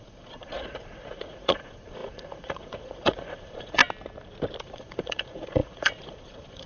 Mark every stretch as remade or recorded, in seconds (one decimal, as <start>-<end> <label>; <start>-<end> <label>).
0.0-3.8 remade; 3.8-4.6 recorded; 4.6-6.7 remade